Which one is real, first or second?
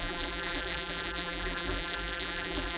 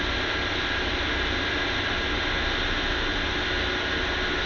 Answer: second